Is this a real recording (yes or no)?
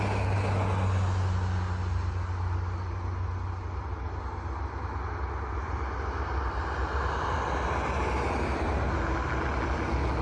yes